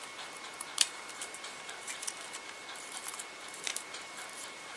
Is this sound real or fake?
fake